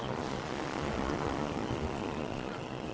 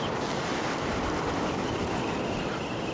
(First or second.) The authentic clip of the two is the second